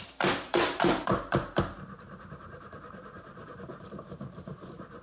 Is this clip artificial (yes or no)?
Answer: yes